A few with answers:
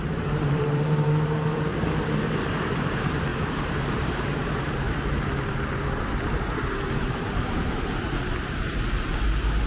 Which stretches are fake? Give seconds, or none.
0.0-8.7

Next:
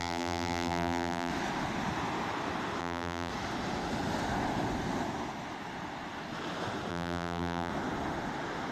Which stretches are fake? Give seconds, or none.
0.0-1.3; 2.8-3.3; 6.9-7.7

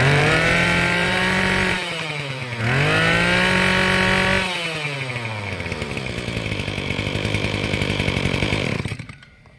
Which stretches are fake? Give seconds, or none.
0.0-2.4; 5.5-9.6

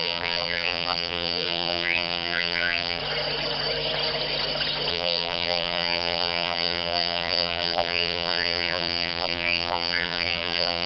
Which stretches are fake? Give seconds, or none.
0.0-3.0; 4.9-10.9